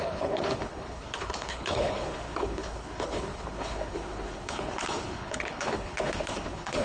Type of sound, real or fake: fake